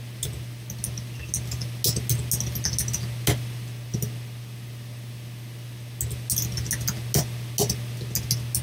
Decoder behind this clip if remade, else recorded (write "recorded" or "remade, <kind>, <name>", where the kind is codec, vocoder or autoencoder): recorded